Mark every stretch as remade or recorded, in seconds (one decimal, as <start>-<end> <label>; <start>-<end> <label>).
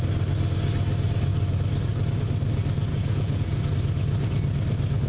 0.0-2.9 recorded; 2.9-3.7 remade; 3.7-5.1 recorded